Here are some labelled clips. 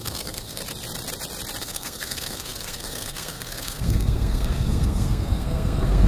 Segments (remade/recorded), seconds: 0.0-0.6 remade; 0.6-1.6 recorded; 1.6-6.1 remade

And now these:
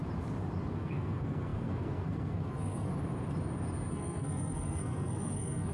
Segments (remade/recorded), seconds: 0.0-0.7 recorded; 0.7-2.9 remade; 2.9-3.9 recorded; 3.9-5.7 remade

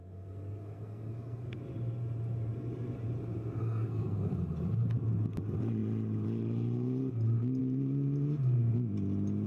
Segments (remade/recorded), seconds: 0.0-1.6 remade; 1.6-3.6 recorded; 3.6-4.3 remade; 4.3-9.5 recorded

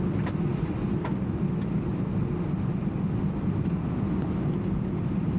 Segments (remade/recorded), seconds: 0.0-5.4 recorded

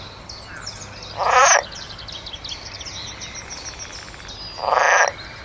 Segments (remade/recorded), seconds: 0.0-5.4 recorded

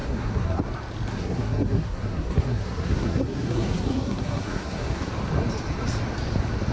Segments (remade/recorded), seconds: 0.0-0.6 remade; 0.6-1.1 recorded; 1.1-5.1 remade; 5.1-6.7 recorded